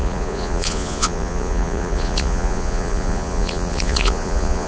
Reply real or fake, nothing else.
fake